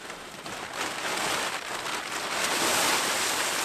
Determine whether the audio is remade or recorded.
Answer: recorded